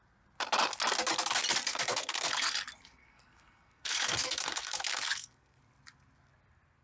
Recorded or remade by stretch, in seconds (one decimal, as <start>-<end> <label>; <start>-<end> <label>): 0.0-1.7 recorded; 1.7-2.5 remade; 2.5-3.0 recorded; 3.0-5.6 remade; 5.6-6.8 recorded